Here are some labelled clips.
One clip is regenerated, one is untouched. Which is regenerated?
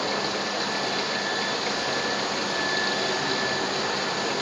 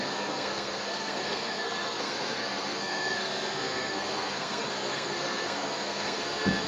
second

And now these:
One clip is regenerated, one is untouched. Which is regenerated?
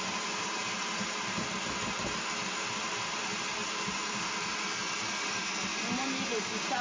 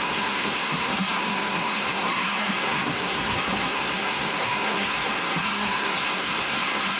second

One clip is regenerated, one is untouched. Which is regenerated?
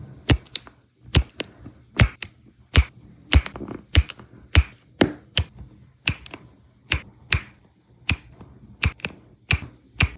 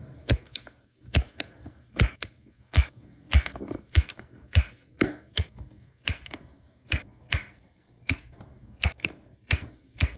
second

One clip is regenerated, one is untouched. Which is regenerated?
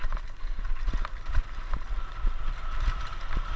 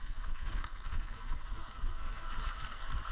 second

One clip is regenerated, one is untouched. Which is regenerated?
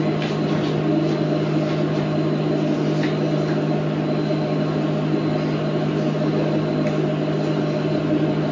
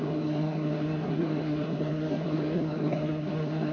second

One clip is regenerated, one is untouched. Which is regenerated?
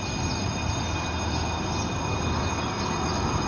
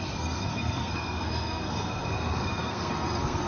second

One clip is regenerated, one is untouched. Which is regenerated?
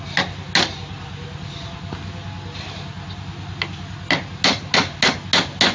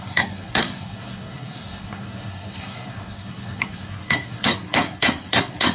second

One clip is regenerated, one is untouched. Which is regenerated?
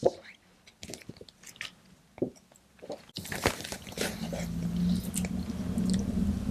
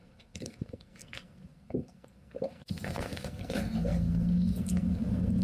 second